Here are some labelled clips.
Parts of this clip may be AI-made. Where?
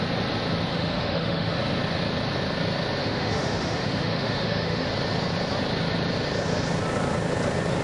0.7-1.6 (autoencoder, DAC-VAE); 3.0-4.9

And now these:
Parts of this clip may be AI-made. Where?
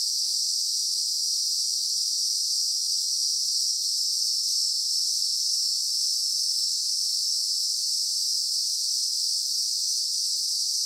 0.0-3.2 (autoencoder, DAC-VAE); 3.7-10.9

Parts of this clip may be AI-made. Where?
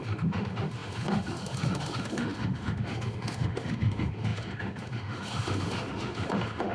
0.0-6.7 (autoencoder, DAC-VAE)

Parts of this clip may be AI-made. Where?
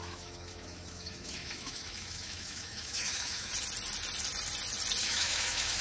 0.0-3.5 (autoencoder, DAC-VAE); 5.0-5.8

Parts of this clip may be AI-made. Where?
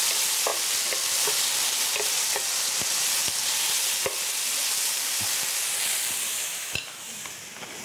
6.3-7.2 (autoencoder, DAC-VAE)